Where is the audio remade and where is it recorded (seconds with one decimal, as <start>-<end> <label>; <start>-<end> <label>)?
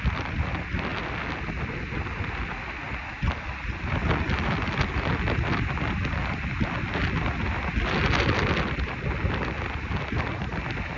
0.0-11.0 recorded